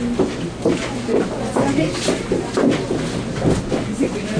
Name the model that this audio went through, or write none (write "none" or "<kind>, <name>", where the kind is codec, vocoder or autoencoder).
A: none